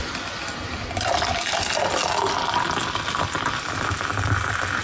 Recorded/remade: recorded